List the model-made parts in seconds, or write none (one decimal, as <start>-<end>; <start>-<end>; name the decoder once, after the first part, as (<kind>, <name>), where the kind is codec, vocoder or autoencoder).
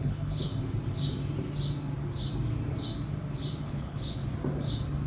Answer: 0.0-0.5 (codec, HILCodec); 3.6-4.2